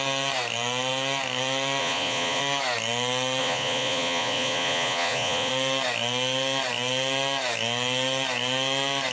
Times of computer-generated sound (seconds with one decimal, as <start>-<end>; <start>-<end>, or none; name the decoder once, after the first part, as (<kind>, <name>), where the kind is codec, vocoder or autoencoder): 1.8-2.4 (vocoder, Vocos); 3.4-5.5